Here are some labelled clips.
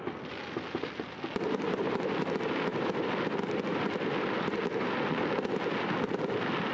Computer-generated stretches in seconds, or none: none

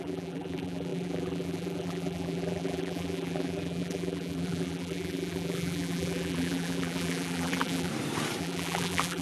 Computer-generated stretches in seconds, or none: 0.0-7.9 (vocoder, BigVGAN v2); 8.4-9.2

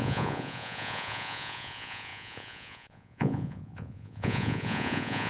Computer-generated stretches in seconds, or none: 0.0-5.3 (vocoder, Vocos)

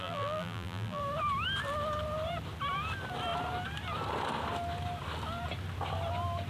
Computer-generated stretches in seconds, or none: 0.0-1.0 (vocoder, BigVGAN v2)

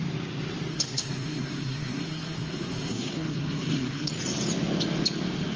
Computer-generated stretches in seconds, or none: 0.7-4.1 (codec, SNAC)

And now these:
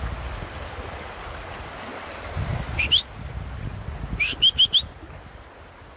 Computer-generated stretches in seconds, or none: none

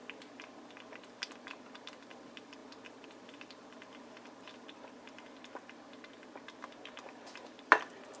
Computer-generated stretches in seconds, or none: 1.3-2.6 (vocoder, BigVGAN v2); 3.4-8.2